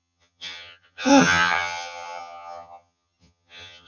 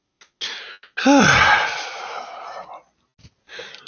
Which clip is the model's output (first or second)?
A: first